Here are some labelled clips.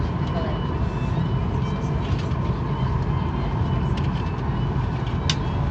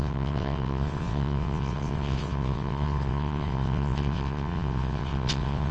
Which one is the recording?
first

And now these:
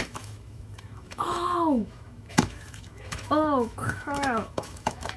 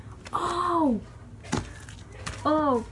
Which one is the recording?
second